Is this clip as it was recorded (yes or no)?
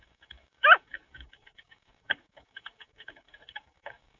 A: no